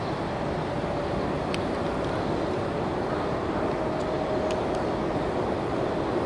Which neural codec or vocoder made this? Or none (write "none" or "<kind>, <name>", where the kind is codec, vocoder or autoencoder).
none